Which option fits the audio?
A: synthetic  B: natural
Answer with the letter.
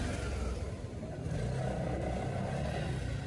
B